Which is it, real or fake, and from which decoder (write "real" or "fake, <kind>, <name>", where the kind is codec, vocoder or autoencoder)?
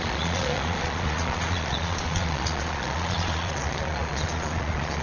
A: fake, vocoder, Vocos